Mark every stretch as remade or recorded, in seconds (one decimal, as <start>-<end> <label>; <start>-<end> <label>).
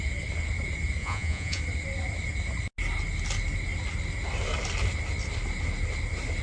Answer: 0.0-1.0 recorded; 1.0-1.6 remade; 1.6-6.4 recorded